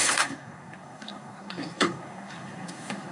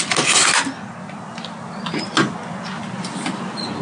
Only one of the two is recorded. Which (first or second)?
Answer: second